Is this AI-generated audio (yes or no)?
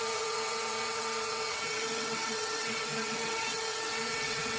yes